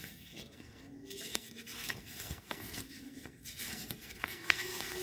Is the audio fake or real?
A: fake